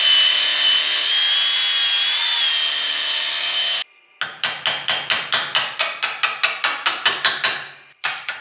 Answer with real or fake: real